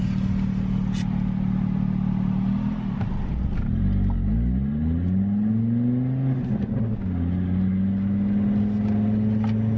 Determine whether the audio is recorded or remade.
recorded